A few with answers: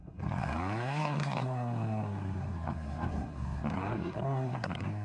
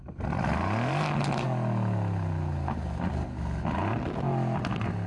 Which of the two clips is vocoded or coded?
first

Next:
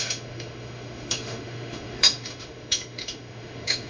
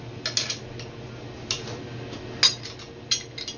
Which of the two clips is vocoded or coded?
first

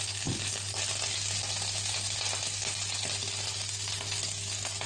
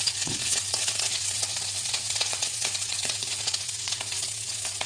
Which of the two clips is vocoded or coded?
second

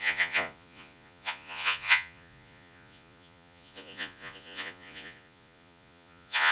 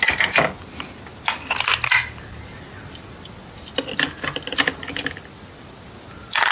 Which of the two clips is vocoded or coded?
first